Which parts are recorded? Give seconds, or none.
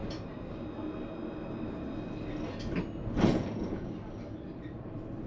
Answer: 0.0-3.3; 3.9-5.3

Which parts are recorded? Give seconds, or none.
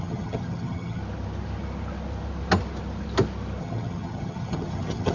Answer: 1.0-3.6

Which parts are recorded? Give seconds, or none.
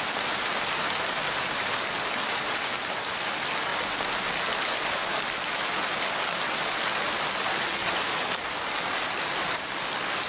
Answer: 0.0-10.3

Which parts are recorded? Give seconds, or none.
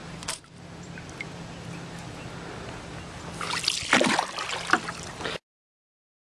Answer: 1.4-6.3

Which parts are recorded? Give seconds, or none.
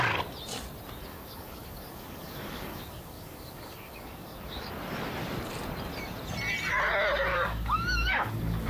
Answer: 0.0-1.1; 4.7-7.3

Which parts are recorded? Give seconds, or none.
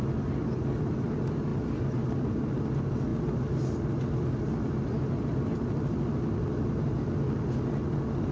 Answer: 0.0-8.3